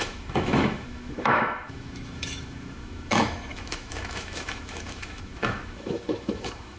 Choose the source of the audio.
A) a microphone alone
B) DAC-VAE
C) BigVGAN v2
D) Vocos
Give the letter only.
B